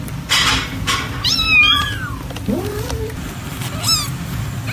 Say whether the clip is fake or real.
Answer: real